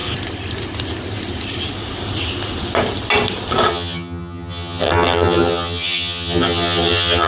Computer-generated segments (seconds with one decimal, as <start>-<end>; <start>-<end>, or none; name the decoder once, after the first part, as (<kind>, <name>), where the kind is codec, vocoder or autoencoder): 3.7-7.3 (vocoder, HiFi-GAN)